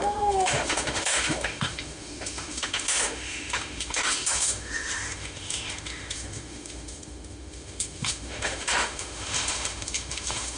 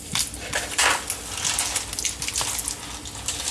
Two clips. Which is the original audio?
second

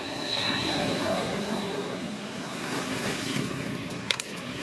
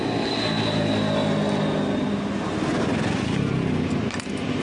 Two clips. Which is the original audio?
second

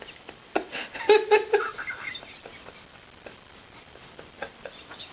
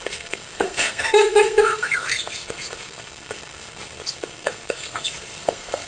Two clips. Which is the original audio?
first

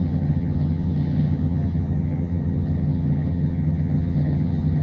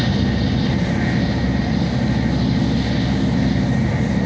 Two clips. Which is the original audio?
second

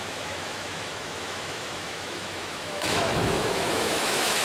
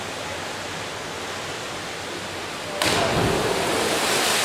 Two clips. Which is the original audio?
second